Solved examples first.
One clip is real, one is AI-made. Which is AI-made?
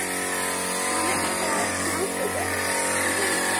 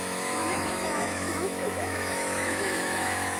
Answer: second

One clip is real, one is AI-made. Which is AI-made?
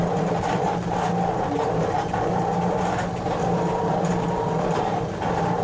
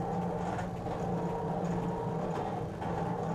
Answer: first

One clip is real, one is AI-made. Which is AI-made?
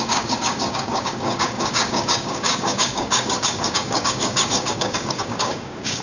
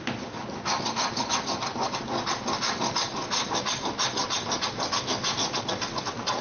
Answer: first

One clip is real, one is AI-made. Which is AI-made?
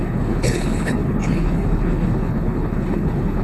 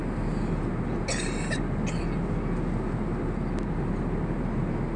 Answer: first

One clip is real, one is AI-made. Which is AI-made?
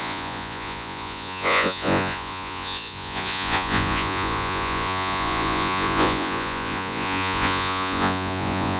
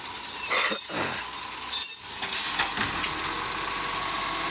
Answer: first